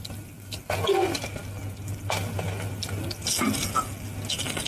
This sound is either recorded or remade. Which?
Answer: recorded